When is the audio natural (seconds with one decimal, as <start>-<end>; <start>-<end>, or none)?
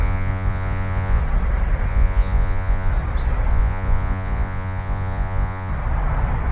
1.2-1.9; 2.9-3.5; 5.7-6.5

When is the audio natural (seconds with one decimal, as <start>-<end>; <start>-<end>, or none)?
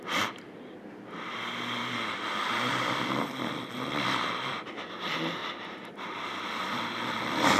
none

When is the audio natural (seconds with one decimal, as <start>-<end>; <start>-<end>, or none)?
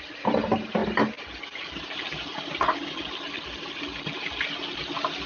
0.0-5.3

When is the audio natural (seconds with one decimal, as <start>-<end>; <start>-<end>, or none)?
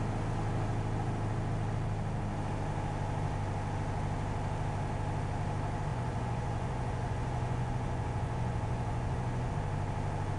0.0-5.9; 9.5-10.4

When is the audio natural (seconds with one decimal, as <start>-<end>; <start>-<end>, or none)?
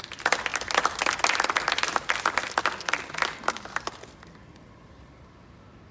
0.0-5.9